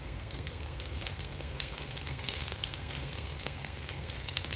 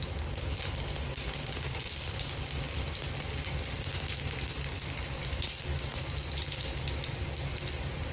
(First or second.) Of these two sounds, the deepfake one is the first